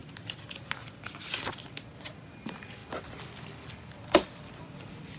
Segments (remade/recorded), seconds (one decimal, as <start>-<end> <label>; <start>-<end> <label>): 0.0-2.3 recorded; 2.3-2.8 remade; 2.8-4.0 recorded; 4.0-5.2 remade